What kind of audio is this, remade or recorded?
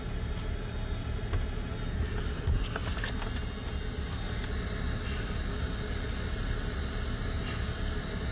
recorded